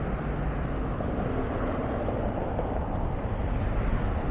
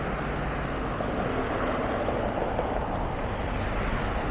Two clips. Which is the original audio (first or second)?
second